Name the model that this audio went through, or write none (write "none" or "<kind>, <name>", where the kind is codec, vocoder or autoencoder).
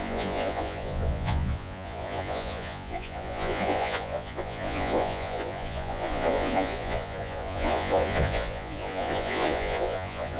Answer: vocoder, Vocos